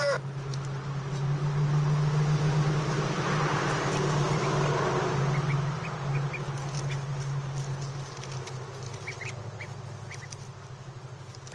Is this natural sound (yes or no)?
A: yes